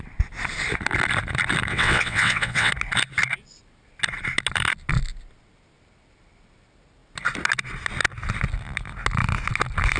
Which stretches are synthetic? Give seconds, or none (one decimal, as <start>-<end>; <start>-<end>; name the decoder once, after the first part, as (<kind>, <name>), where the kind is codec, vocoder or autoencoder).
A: 1.7-2.7 (vocoder, WaveNeXt)